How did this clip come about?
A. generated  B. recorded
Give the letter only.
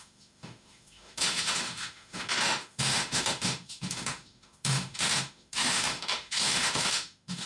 A